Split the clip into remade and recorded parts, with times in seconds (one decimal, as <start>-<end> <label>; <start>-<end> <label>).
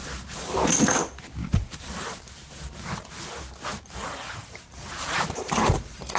0.0-0.7 remade; 0.7-1.4 recorded; 1.4-2.4 remade; 2.4-3.7 recorded; 3.7-6.2 remade